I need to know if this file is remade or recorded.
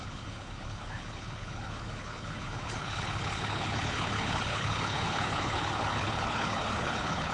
remade